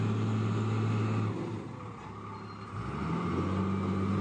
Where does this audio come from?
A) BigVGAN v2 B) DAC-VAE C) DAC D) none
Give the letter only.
D